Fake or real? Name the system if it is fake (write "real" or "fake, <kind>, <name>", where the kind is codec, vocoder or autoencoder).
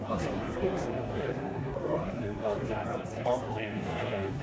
fake, codec, SNAC